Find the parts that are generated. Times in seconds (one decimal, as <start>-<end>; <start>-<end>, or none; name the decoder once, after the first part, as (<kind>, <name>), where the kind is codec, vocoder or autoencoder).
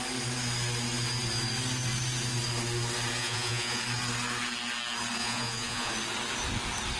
3.2-3.8 (vocoder, Vocos); 5.2-5.9